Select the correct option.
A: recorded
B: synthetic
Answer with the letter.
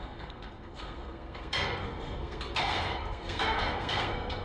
B